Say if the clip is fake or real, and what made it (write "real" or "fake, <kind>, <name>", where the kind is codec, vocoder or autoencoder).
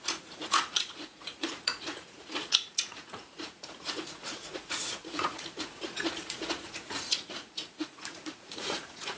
fake, vocoder, Vocos